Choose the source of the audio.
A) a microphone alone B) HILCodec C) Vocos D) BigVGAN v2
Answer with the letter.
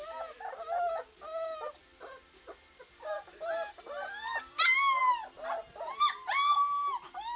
A